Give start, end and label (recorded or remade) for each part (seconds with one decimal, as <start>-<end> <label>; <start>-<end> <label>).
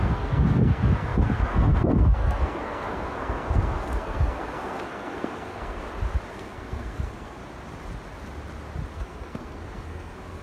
0.0-5.8 remade; 5.8-6.3 recorded; 6.3-7.4 remade; 7.4-8.9 recorded; 8.9-10.4 remade